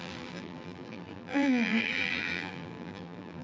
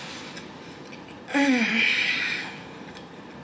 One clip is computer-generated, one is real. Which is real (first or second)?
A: second